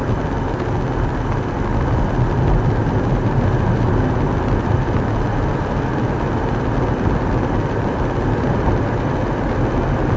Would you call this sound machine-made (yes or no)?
no